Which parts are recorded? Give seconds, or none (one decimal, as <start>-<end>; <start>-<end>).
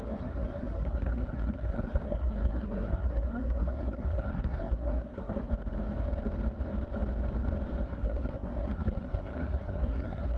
5.5-7.9